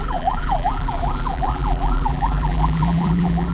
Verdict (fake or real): fake